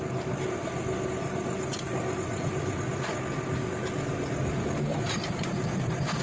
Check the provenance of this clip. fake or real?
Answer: real